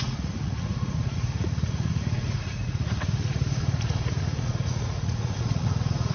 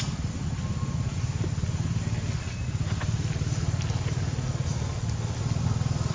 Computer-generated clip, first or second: first